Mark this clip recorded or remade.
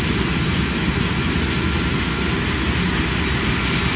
recorded